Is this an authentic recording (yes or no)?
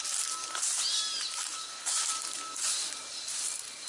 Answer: yes